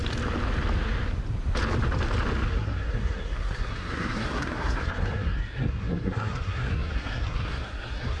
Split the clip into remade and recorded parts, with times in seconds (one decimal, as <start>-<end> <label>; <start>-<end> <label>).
0.0-2.5 recorded; 2.5-8.2 remade